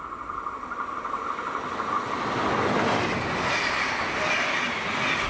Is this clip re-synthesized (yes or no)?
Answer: no